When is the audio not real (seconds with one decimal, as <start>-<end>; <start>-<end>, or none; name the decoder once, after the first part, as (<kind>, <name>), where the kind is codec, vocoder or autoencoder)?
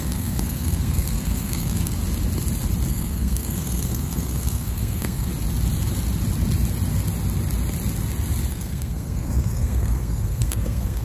0.0-2.0 (codec, SNAC); 2.9-5.3; 8.5-11.0